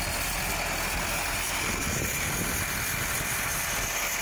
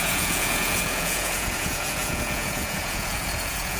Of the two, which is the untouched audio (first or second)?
first